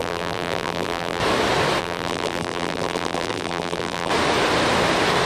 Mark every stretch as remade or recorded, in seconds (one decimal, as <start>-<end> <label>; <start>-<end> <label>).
0.0-1.2 remade; 1.2-1.8 recorded; 1.8-4.1 remade; 4.1-5.3 recorded